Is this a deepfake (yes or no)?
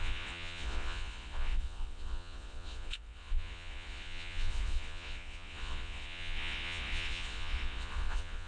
yes